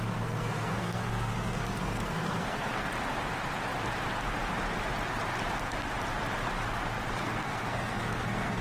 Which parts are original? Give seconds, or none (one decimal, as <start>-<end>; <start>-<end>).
2.9-7.1